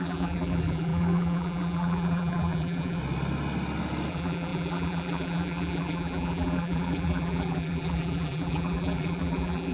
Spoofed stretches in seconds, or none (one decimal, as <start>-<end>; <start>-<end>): 0.0-3.0; 4.1-9.7